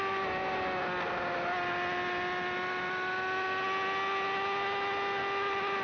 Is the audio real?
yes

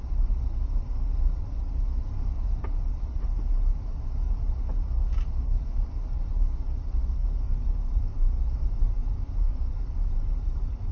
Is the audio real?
yes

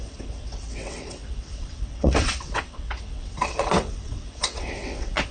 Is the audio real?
no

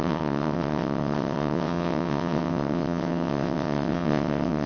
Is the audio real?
no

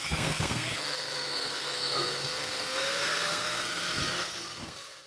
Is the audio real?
no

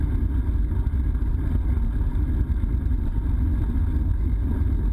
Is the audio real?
yes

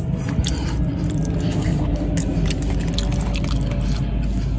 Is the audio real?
yes